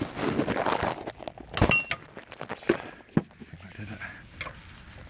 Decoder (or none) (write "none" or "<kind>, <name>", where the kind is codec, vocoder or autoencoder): none